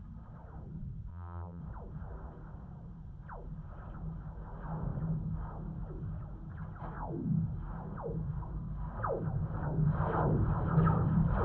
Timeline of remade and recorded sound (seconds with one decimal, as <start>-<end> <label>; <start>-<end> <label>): 0.0-1.1 recorded; 1.1-1.6 remade; 1.6-11.4 recorded

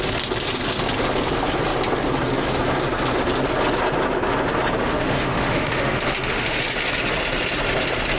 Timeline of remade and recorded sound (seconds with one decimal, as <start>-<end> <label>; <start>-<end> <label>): 0.0-4.8 recorded; 4.8-6.6 remade; 6.6-8.2 recorded